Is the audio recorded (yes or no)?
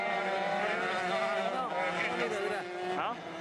yes